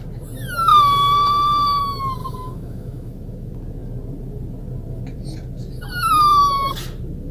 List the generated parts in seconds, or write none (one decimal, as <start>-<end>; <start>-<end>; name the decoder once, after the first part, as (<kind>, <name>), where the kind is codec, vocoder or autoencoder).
0.7-1.8 (autoencoder, DAC-VAE); 2.2-3.1